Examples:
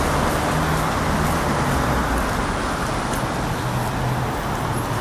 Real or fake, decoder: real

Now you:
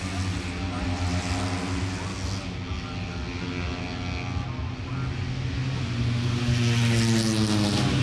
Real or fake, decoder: real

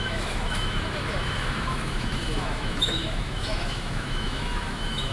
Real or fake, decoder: fake, autoencoder, DAC-VAE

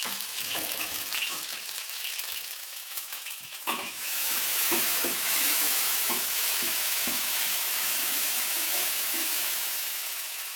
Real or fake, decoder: fake, autoencoder, DAC-VAE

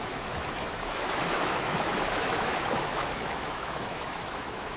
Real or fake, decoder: fake, autoencoder, DAC-VAE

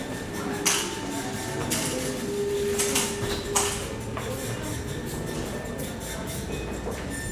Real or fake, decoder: real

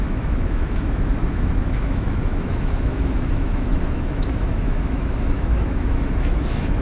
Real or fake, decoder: fake, autoencoder, DAC-VAE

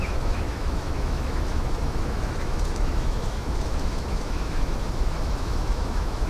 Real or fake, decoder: fake, autoencoder, DAC-VAE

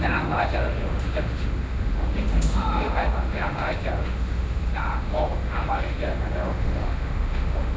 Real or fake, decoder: fake, autoencoder, DAC-VAE